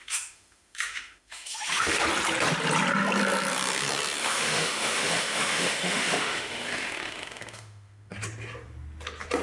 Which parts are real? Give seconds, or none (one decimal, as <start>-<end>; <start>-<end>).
2.0-4.2; 8.1-9.4